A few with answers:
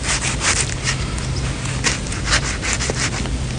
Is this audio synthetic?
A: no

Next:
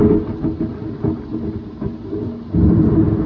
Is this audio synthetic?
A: no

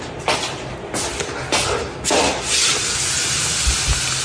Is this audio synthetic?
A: no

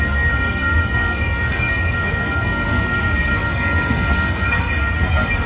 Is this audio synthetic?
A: yes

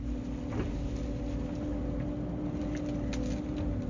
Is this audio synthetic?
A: no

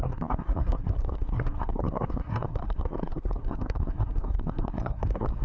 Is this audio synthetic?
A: yes